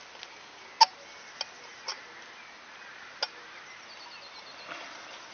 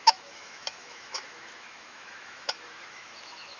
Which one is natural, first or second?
first